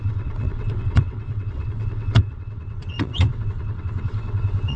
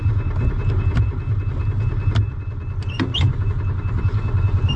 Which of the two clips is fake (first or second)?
first